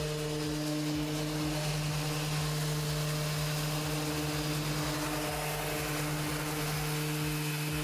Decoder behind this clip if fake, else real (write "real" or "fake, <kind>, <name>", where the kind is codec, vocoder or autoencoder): real